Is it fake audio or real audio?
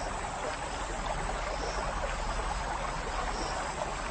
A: real